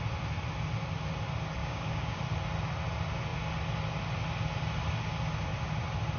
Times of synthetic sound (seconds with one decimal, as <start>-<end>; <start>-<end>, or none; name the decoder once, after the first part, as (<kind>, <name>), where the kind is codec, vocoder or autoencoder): 1.6-2.2 (codec, DAC)

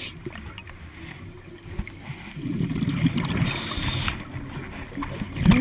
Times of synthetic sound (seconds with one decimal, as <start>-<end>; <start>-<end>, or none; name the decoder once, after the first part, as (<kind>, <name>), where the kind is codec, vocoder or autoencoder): none

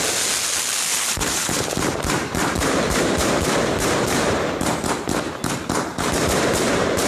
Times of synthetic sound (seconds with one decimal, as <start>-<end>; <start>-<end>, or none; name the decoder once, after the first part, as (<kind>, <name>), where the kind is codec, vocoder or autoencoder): 0.9-4.9 (vocoder, BigVGAN v2); 5.9-7.1

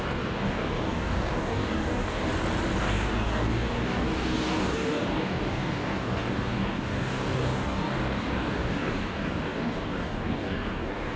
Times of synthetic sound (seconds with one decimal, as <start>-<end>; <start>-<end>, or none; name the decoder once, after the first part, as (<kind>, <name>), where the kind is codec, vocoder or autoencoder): 0.0-2.3 (codec, DAC); 2.8-11.2

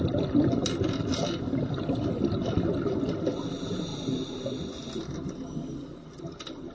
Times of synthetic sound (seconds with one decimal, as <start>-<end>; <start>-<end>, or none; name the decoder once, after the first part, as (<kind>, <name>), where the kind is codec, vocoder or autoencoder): none

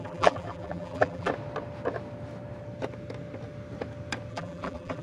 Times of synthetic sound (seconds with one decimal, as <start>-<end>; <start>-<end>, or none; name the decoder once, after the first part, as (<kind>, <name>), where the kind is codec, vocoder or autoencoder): 0.0-1.3 (vocoder, BigVGAN v2); 4.3-5.0

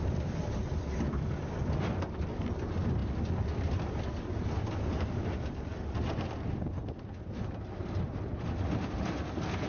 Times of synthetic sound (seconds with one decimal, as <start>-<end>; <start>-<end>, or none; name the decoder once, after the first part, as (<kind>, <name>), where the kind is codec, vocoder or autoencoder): none